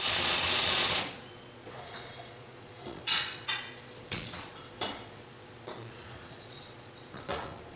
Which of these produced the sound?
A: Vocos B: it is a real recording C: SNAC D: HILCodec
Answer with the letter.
A